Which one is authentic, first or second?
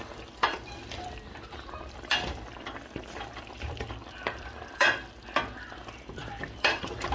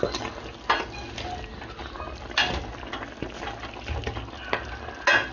second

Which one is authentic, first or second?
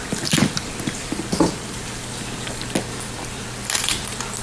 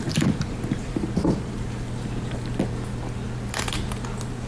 second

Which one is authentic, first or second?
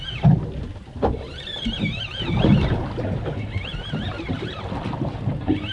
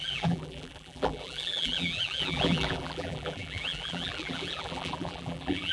first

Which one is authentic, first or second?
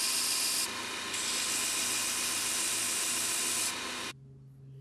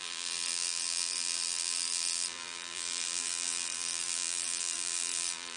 first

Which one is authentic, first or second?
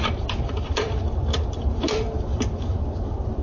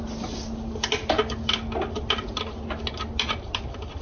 second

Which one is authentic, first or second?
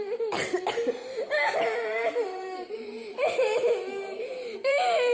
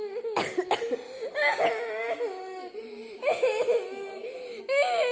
second